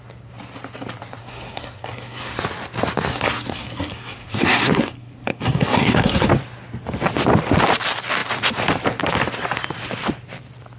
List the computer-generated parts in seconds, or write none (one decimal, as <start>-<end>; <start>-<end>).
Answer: 1.2-2.4; 3.1-6.3